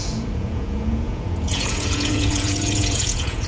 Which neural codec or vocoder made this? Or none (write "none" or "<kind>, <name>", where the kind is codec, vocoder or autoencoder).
vocoder, Vocos